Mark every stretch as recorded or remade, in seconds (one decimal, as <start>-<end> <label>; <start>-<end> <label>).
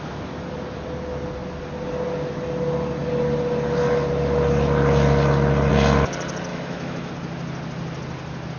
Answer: 0.0-6.5 recorded; 6.5-7.1 remade; 7.1-8.6 recorded